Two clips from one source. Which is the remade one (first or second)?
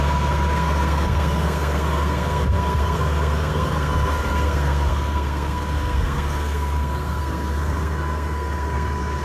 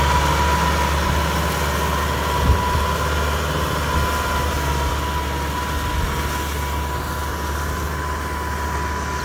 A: first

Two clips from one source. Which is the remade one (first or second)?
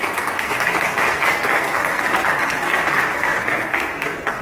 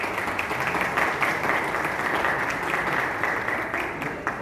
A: first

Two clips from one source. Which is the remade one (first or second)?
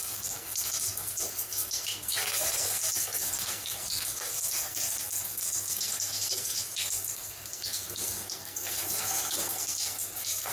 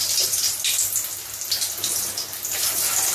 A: first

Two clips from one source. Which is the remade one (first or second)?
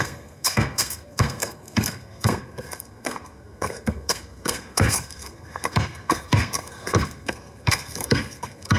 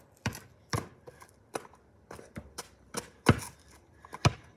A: first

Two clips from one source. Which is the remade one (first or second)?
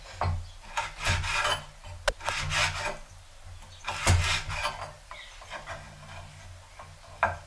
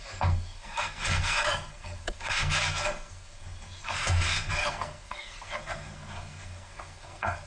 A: second